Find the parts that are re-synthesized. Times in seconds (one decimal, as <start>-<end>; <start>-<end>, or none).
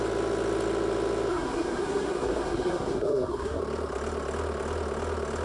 1.3-3.6